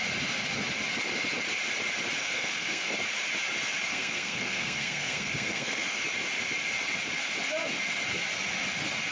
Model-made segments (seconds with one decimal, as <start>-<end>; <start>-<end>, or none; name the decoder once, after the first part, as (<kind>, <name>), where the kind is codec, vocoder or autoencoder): 2.2-2.9 (codec, SNAC); 3.9-6.0